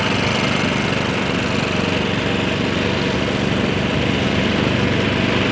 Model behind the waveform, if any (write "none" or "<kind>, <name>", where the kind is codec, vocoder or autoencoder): none